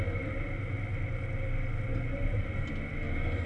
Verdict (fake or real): real